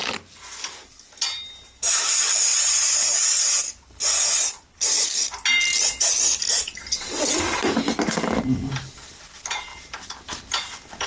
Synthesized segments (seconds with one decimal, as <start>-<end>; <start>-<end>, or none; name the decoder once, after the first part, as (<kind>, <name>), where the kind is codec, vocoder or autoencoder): none